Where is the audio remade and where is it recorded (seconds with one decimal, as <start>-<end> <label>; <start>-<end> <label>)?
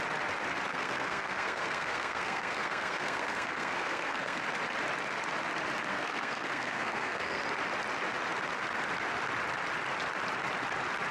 0.0-0.7 recorded; 0.7-4.4 remade; 4.4-5.9 recorded; 5.9-7.4 remade; 7.4-11.1 recorded